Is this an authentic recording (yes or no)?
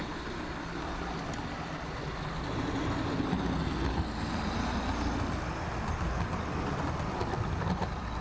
yes